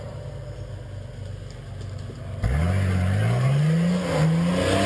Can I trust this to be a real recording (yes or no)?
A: yes